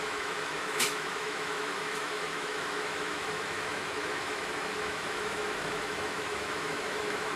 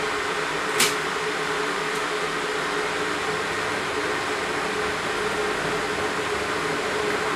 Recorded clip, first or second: second